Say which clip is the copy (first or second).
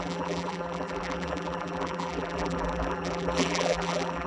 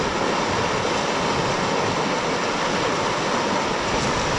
first